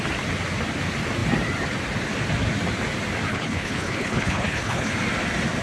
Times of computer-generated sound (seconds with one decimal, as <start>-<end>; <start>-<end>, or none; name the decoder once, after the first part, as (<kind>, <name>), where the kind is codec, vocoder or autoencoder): 3.3-4.9 (codec, HILCodec)